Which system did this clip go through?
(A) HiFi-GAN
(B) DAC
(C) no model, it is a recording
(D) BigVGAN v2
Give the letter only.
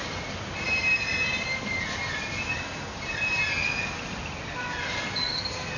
C